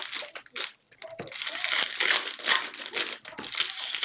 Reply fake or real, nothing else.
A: real